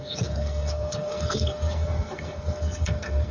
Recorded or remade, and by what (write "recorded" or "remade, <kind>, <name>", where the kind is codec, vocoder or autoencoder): remade, codec, SNAC